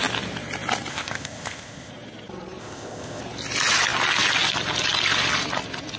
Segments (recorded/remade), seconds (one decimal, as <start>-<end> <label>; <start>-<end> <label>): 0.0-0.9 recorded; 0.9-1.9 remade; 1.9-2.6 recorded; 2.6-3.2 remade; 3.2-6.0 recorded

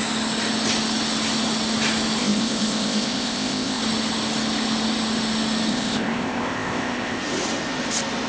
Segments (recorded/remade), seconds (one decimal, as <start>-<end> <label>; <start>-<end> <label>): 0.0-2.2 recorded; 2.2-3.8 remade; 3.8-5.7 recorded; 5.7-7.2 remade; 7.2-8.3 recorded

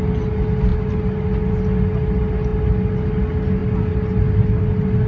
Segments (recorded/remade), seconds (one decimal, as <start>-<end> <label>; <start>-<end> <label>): 0.0-5.1 recorded

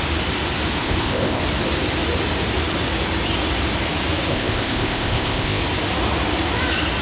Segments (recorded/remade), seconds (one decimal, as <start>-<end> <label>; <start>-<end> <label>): 0.0-0.8 recorded; 0.8-1.4 remade; 1.4-4.3 recorded; 4.3-5.6 remade; 5.6-7.0 recorded

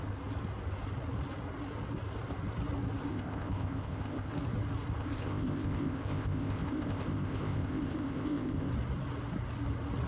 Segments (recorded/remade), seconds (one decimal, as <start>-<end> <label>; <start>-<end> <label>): 0.0-3.1 recorded; 3.1-4.3 remade; 4.3-5.0 recorded; 5.0-8.7 remade; 8.7-10.1 recorded